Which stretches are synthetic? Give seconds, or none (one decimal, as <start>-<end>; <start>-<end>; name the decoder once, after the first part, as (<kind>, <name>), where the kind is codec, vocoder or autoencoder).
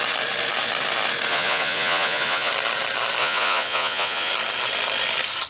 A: 1.3-2.5 (vocoder, Vocos); 3.2-4.3